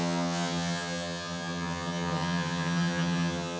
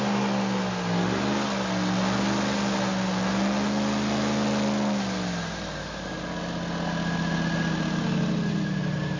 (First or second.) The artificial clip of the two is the first